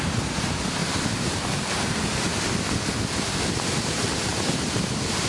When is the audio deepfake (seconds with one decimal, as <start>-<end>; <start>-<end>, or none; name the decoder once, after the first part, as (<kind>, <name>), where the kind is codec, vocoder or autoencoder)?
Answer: 0.0-2.3 (vocoder, BigVGAN v2); 3.4-5.3